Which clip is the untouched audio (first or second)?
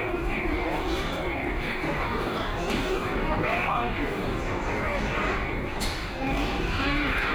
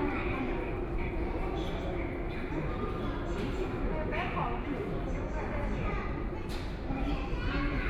second